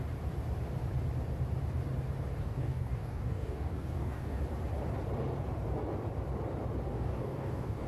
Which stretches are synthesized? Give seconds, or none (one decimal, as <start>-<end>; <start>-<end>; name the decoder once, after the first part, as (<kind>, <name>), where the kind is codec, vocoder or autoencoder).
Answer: 2.4-4.4 (codec, DAC); 6.9-7.9